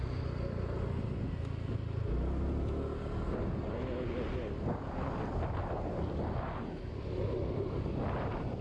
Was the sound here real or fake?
real